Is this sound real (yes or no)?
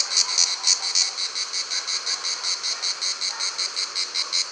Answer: yes